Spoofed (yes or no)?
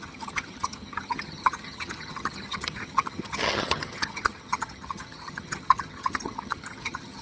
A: yes